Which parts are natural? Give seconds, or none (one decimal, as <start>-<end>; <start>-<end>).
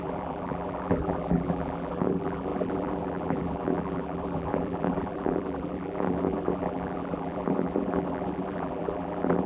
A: none